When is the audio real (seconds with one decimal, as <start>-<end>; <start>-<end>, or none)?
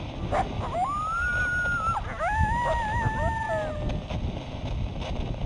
0.0-5.5